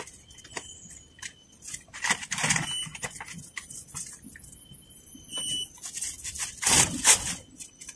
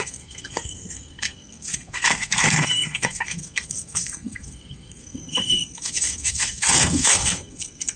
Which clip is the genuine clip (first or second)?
first